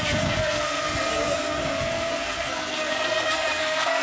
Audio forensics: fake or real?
fake